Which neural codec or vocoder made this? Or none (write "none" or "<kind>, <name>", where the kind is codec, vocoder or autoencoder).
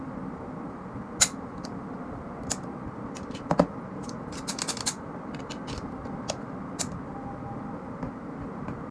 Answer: none